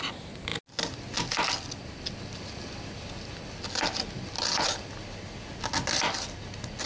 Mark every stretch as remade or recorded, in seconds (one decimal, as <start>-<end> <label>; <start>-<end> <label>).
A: 0.0-6.9 recorded